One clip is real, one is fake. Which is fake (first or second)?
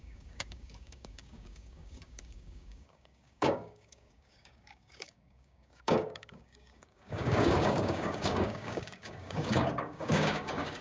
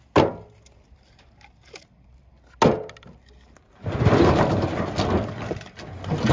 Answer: first